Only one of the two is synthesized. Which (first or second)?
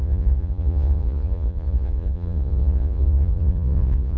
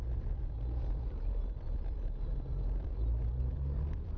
first